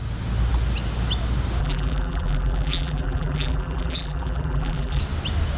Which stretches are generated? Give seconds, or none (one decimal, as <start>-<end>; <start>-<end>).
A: 1.6-5.0